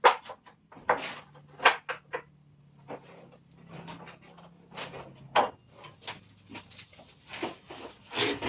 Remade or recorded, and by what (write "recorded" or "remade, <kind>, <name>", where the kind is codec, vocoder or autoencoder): recorded